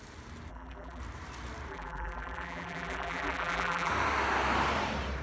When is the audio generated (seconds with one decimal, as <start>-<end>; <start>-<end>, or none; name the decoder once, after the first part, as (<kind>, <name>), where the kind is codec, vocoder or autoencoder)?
0.5-1.0 (vocoder, BigVGAN v2); 1.7-3.9